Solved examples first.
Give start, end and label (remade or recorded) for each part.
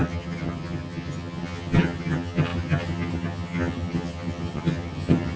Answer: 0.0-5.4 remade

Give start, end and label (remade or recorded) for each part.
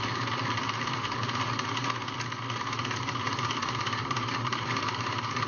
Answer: 0.0-1.8 remade; 1.8-2.6 recorded; 2.6-5.5 remade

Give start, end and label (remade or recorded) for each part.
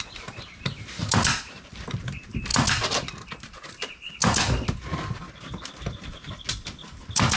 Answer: 0.0-7.4 recorded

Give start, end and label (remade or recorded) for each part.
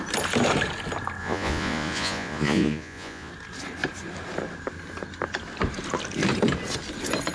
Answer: 0.0-1.2 recorded; 1.2-3.3 remade; 3.3-7.3 recorded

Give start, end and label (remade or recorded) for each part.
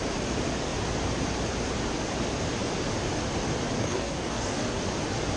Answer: 0.0-3.8 recorded; 3.8-4.8 remade; 4.8-5.4 recorded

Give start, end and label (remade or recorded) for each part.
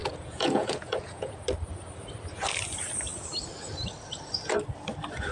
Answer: 0.0-1.4 remade; 1.4-5.3 recorded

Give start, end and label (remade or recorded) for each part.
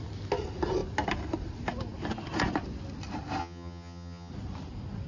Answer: 0.0-3.4 recorded; 3.4-4.3 remade; 4.3-5.1 recorded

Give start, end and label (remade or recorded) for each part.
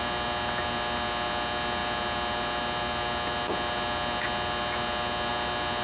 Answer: 0.0-5.8 recorded